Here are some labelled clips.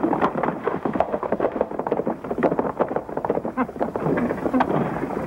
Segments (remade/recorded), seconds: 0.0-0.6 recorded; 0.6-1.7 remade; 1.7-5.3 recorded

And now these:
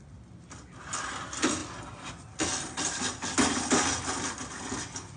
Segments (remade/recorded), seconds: 0.0-5.2 recorded

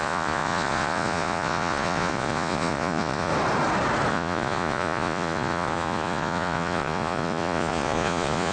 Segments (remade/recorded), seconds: 0.0-3.3 remade; 3.3-4.1 recorded; 4.1-8.5 remade